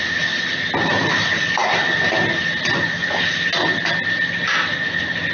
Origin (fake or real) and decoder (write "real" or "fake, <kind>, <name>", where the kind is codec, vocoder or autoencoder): real